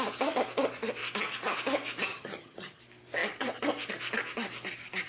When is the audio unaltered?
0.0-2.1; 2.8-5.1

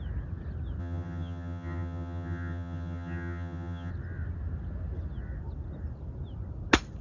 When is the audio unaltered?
0.0-0.8; 3.9-7.0

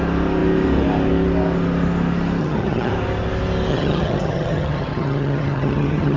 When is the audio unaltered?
0.0-2.4; 2.9-3.7

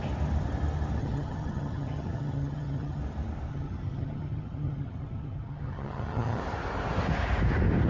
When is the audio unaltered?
0.0-1.0; 3.0-3.5; 6.4-7.9

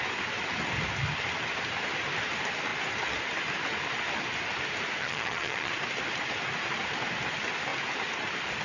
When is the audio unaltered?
0.0-5.0; 5.7-8.6

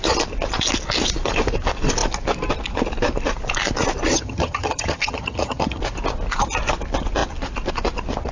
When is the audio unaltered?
0.0-4.1; 5.8-8.3

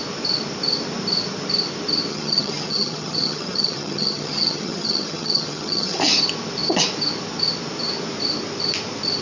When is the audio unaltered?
0.0-2.1; 6.0-9.2

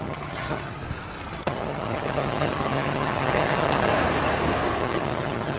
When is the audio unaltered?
0.8-1.3; 3.9-4.8